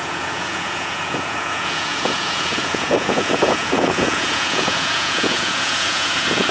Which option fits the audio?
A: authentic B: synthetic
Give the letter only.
B